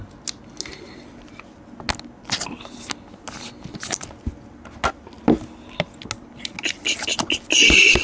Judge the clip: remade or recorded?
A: recorded